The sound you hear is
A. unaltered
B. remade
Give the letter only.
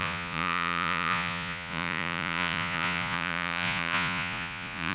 B